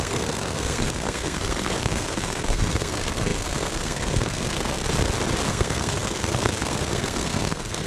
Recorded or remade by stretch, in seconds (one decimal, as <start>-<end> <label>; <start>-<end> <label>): 0.0-4.8 remade; 4.8-5.5 recorded; 5.5-7.9 remade